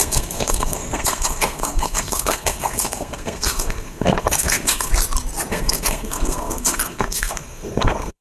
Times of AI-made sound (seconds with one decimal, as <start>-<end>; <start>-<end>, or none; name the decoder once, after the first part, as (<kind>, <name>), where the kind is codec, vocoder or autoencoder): 0.0-4.9 (codec, SNAC); 5.5-8.2